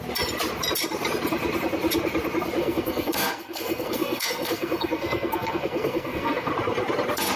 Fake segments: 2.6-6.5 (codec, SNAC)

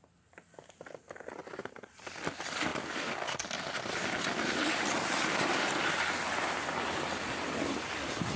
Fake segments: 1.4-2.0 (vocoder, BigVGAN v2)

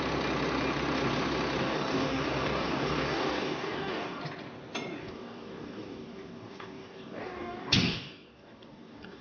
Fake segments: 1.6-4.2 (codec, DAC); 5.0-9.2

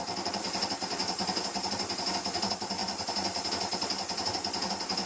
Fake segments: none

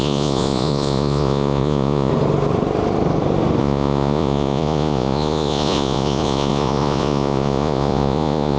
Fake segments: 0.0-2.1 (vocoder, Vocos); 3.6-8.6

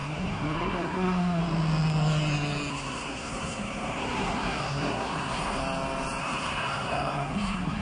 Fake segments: 0.0-1.4 (codec, SNAC); 2.7-5.6; 6.2-7.8

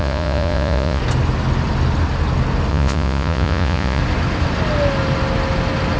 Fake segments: 0.0-1.0 (vocoder, Vocos); 2.7-4.0